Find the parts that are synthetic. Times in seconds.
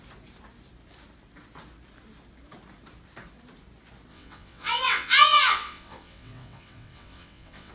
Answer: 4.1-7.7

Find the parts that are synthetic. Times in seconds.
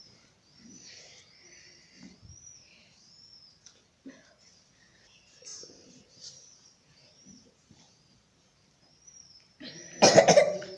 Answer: 5.5-10.8